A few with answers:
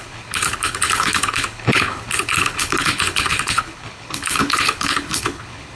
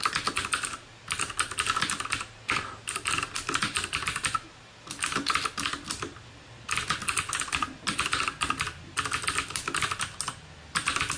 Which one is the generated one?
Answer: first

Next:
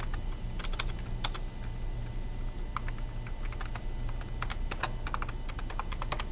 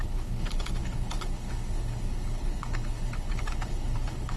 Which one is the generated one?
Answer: second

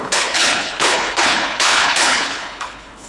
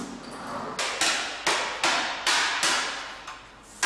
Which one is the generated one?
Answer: first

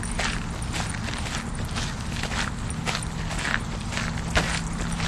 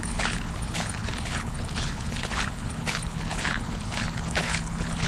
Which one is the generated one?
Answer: second